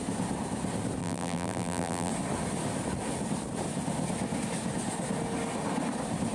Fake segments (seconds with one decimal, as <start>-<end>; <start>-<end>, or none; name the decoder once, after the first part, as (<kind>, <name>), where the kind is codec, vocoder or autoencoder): 1.0-2.1 (vocoder, BigVGAN v2)